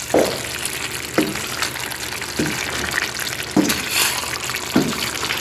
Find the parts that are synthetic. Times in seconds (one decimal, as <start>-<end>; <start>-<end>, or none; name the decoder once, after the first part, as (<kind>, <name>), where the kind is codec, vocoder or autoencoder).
none